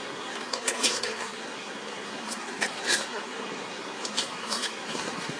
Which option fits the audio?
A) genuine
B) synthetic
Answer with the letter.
B